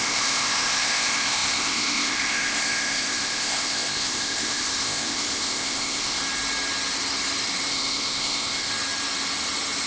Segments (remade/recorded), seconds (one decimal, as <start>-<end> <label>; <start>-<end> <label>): 0.0-6.2 remade; 6.2-7.7 recorded; 7.7-8.7 remade; 8.7-9.9 recorded